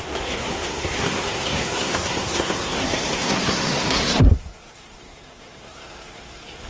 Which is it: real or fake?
fake